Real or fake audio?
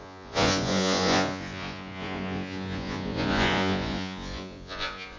fake